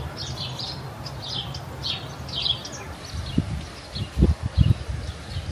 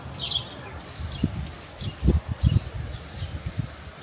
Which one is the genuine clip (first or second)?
first